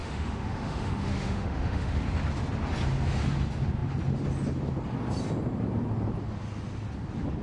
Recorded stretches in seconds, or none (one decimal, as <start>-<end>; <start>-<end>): 2.0-7.4